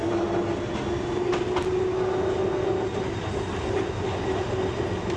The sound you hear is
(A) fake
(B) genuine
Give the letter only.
B